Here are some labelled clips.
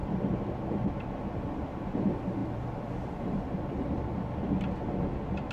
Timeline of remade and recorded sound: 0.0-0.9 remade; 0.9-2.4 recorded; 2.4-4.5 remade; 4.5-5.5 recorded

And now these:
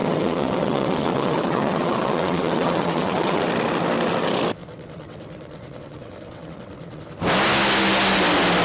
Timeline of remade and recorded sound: 0.0-3.4 remade; 3.4-4.6 recorded; 4.6-7.0 remade; 7.0-8.6 recorded

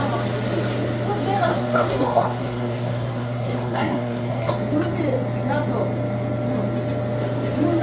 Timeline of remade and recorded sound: 0.0-1.5 recorded; 1.5-4.5 remade; 4.5-7.8 recorded

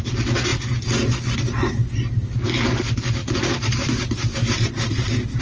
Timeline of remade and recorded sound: 0.0-3.2 recorded; 3.2-5.4 remade

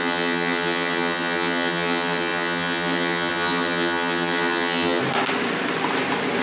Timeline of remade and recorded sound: 0.0-5.0 remade; 5.0-6.4 recorded

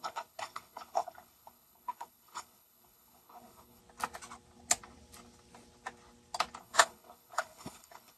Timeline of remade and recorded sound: 0.0-3.8 remade; 3.8-6.6 recorded; 6.6-8.2 remade

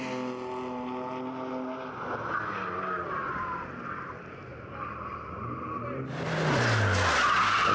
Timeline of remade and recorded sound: 0.0-4.5 recorded; 4.5-6.1 remade; 6.1-7.7 recorded

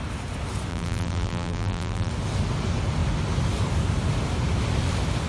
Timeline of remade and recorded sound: 0.0-0.7 recorded; 0.7-2.1 remade; 2.1-5.3 recorded